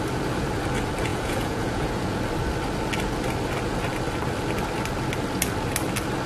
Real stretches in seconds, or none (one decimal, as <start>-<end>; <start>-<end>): 0.0-1.1; 2.2-6.3